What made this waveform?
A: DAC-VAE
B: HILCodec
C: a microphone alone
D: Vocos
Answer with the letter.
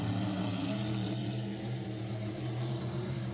C